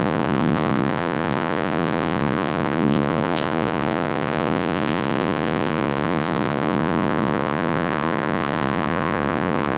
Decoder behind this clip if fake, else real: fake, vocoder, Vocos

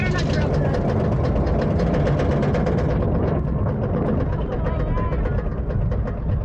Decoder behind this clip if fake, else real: real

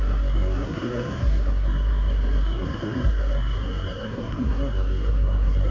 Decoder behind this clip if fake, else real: fake, codec, SNAC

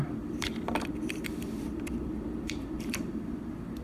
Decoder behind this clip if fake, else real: fake, vocoder, BigVGAN v2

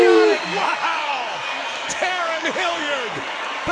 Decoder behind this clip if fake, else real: fake, codec, DAC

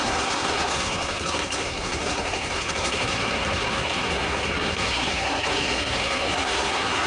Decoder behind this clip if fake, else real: fake, codec, SNAC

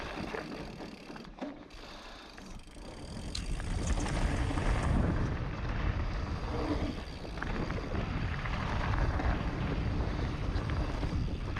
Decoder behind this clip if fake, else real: fake, vocoder, BigVGAN v2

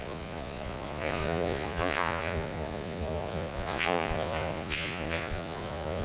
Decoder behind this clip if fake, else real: fake, vocoder, Vocos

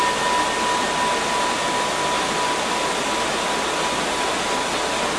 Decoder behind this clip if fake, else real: real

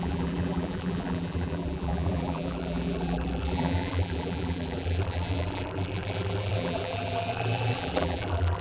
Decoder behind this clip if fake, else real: fake, vocoder, BigVGAN v2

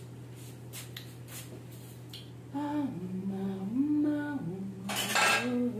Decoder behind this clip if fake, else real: real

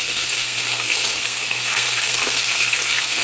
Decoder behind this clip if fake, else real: fake, codec, SNAC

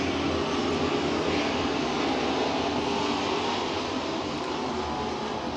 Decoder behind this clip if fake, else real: real